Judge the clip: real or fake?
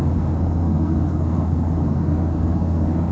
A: fake